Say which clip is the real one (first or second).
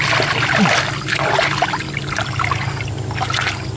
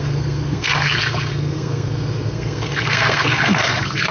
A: first